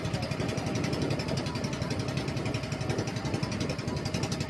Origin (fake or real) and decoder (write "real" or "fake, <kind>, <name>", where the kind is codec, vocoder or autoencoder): real